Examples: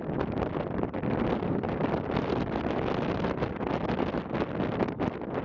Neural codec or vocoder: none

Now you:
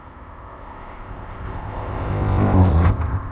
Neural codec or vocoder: codec, ZipCodec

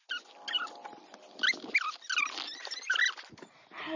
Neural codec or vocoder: none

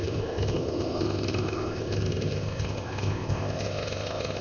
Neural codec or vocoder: codec, ZipCodec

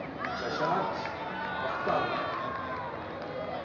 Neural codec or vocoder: none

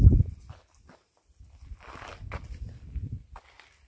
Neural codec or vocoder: none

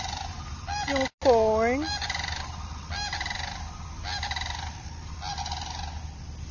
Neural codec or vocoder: none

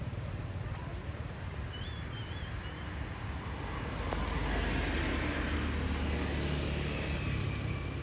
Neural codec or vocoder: none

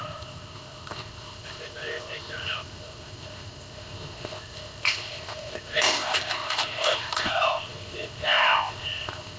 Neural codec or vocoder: codec, ZipCodec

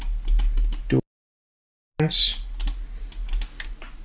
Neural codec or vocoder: none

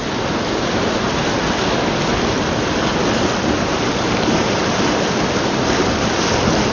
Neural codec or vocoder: none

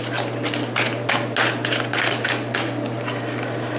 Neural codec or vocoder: none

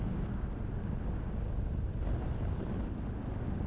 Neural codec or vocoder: none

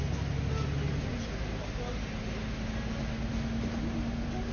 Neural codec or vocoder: none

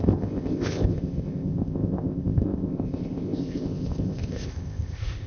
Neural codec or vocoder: codec, ZipCodec